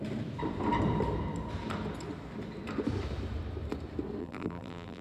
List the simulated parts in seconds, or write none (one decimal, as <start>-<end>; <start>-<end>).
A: 4.2-5.0